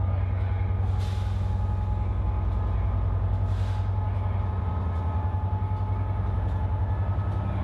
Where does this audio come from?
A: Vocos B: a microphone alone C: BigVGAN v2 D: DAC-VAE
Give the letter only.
B